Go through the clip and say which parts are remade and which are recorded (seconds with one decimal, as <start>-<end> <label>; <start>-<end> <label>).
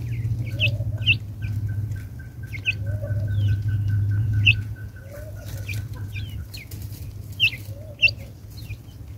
0.0-4.2 recorded; 4.2-5.0 remade; 5.0-9.2 recorded